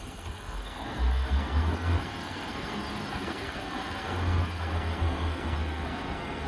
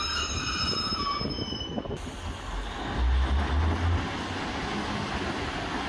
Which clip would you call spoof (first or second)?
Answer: first